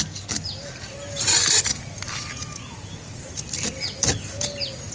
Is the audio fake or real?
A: real